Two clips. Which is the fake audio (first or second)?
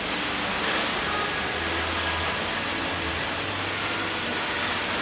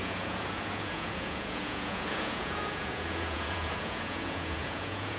second